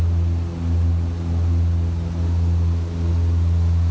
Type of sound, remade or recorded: recorded